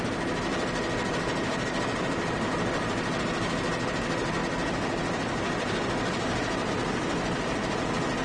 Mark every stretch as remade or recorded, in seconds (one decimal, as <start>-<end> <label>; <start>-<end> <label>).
0.0-0.5 recorded; 0.5-1.8 remade; 1.8-8.2 recorded